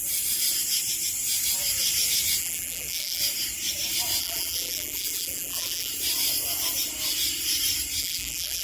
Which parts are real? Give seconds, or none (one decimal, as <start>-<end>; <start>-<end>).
0.0-2.4; 3.2-4.2; 5.9-8.0